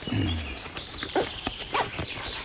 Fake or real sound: fake